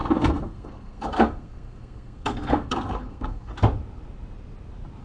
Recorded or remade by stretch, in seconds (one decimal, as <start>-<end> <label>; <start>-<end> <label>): 0.0-3.5 remade; 3.5-5.0 recorded